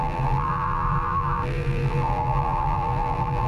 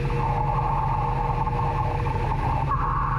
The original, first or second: second